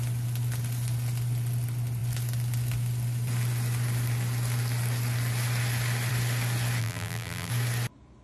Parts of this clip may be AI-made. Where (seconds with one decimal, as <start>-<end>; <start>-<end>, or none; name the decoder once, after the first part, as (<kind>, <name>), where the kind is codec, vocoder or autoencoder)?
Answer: 6.8-7.5 (vocoder, BigVGAN v2)